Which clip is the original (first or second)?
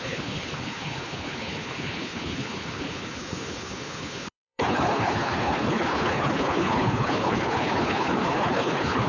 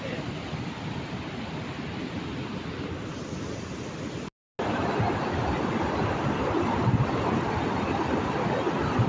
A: second